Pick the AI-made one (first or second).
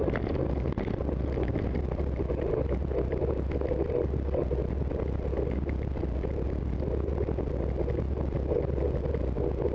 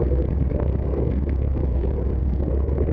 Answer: second